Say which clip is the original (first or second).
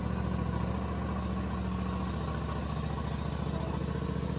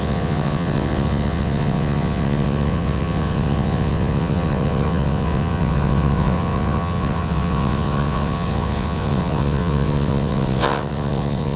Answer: first